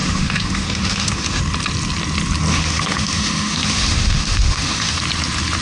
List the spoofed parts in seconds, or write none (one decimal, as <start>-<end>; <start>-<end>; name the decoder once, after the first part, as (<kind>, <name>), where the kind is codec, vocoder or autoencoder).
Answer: 0.0-1.4 (autoencoder, DAC-VAE); 2.5-5.0